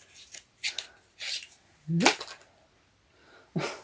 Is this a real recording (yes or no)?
yes